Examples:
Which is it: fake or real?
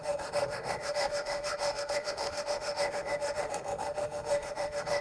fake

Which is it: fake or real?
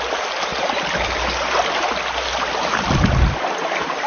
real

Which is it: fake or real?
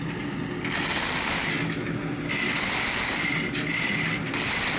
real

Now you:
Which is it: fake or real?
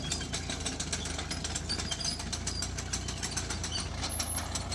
real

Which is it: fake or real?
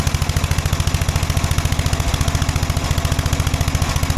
real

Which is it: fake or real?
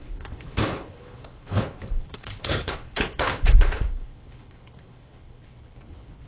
fake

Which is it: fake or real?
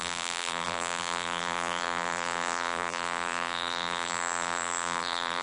fake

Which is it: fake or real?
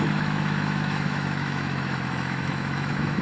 fake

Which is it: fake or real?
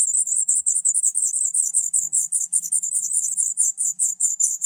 fake